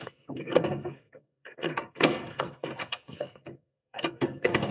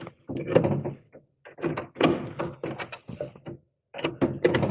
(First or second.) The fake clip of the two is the first